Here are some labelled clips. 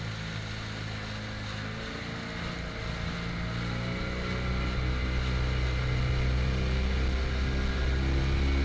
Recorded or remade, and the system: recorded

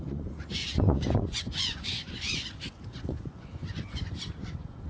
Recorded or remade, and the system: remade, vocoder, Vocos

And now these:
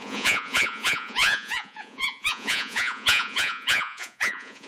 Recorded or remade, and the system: remade, vocoder, Vocos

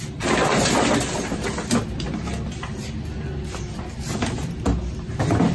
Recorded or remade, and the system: recorded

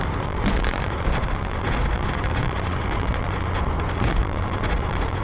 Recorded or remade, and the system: remade, vocoder, Vocos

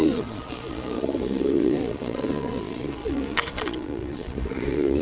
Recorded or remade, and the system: remade, vocoder, Vocos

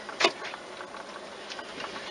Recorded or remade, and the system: recorded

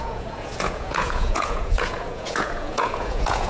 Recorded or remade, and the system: remade, vocoder, Vocos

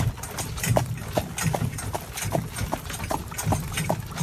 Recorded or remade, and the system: recorded